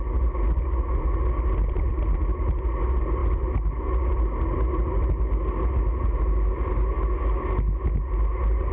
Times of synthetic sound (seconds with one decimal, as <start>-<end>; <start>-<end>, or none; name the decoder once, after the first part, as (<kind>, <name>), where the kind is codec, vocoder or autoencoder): none